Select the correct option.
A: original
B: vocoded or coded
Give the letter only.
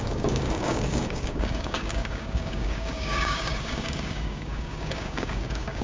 B